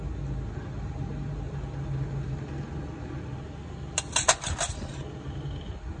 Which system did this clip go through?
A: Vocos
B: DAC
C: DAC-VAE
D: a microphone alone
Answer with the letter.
D